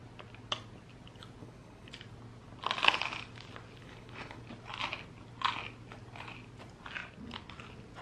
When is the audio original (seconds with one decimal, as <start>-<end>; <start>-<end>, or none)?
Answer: 0.0-1.4; 1.9-3.8; 4.4-8.0